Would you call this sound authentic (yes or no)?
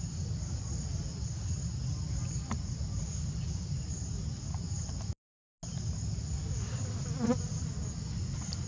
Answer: yes